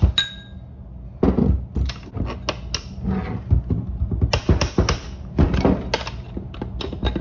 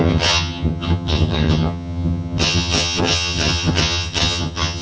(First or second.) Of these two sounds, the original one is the first